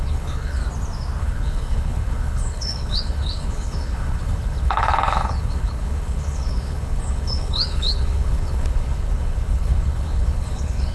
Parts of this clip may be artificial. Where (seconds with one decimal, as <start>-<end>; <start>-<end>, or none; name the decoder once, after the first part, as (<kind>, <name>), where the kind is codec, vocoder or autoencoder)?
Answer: 0.0-0.6 (codec, HILCodec); 1.2-10.9